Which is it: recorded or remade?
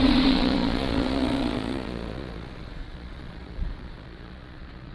remade